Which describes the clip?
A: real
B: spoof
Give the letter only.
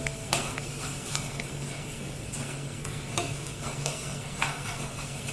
B